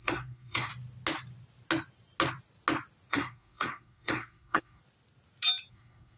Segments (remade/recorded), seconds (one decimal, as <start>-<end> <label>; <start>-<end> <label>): 0.0-0.7 remade; 0.7-3.1 recorded; 3.1-4.8 remade; 4.8-5.7 recorded; 5.7-6.2 remade